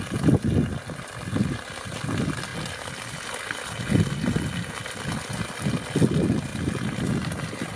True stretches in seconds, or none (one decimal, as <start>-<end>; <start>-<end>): 0.0-7.8